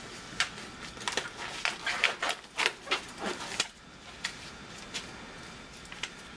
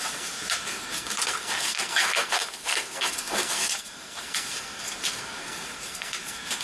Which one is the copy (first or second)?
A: second